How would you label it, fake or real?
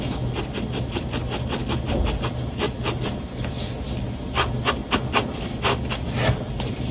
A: real